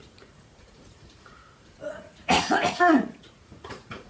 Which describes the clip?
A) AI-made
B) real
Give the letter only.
A